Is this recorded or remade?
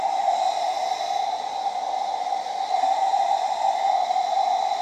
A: recorded